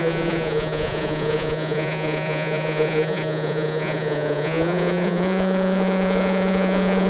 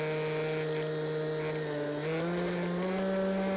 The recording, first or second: second